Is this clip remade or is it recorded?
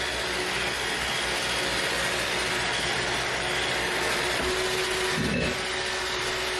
recorded